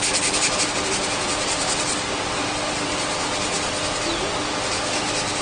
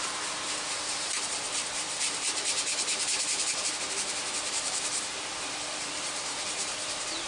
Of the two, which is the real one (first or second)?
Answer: first